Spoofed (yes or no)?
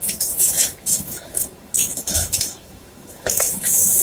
yes